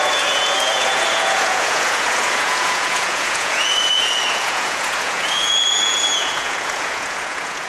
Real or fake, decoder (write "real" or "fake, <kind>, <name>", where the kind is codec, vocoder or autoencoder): fake, vocoder, Vocos